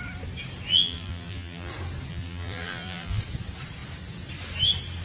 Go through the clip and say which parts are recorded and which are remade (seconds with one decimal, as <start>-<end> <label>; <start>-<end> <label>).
0.0-0.7 recorded; 0.7-1.7 remade; 1.7-2.1 recorded; 2.1-3.2 remade; 3.2-5.0 recorded